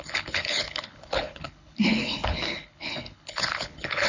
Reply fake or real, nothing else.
fake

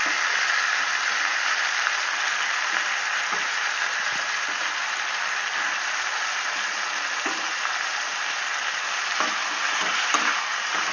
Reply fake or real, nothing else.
real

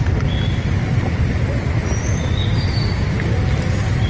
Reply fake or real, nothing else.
real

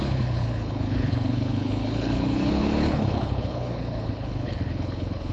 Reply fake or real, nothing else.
fake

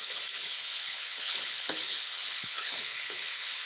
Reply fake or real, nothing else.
fake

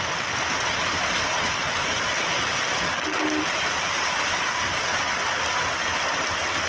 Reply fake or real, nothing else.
real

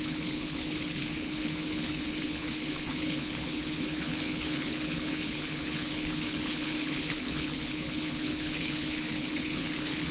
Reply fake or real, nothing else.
fake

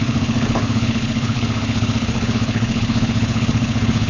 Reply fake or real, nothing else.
fake